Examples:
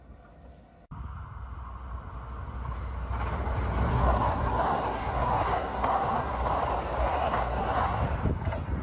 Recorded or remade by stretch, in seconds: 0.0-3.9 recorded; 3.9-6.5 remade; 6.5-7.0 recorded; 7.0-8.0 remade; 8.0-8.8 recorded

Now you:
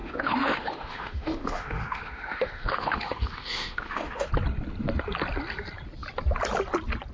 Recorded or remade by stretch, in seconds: 0.0-4.3 remade; 4.3-7.1 recorded

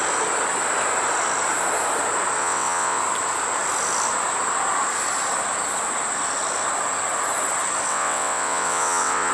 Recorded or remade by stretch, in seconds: 0.0-2.4 recorded; 2.4-3.0 remade; 3.0-7.9 recorded; 7.9-9.3 remade

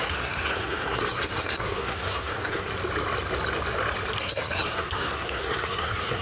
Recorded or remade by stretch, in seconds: 0.0-2.7 remade; 2.7-4.2 recorded; 4.2-6.2 remade

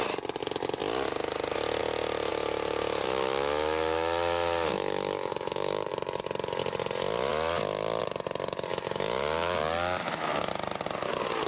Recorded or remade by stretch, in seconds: 0.0-2.3 recorded; 2.3-5.9 remade; 5.9-8.7 recorded; 8.7-10.5 remade; 10.5-11.5 recorded

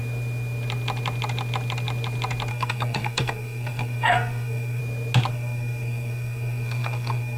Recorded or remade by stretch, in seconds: 0.0-2.5 recorded; 2.5-4.8 remade; 4.8-5.3 recorded; 5.3-7.4 remade

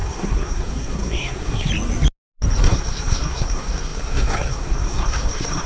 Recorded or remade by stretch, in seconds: 0.0-1.7 remade; 1.7-2.6 recorded; 2.6-5.7 remade